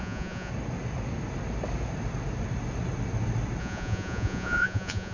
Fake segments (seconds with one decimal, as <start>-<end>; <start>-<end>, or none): 0.0-0.5; 3.6-5.1